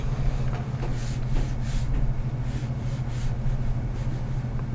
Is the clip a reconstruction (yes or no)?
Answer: no